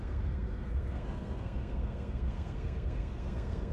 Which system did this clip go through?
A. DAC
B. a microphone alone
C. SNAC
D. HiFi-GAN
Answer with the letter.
C